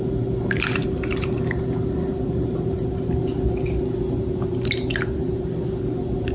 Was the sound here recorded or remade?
recorded